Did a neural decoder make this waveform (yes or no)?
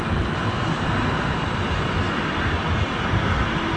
no